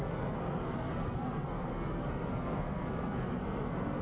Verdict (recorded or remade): remade